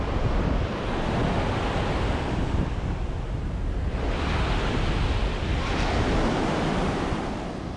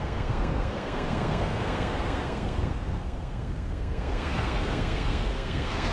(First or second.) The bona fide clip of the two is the first